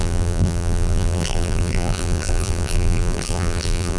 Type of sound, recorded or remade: remade